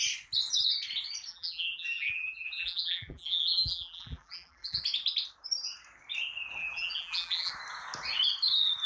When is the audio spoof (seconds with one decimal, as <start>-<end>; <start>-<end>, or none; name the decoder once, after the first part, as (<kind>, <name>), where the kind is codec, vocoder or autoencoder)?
1.3-4.8 (vocoder, BigVGAN v2); 6.6-7.5